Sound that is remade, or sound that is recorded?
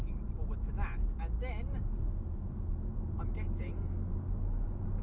recorded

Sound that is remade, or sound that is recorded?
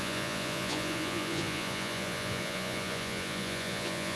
remade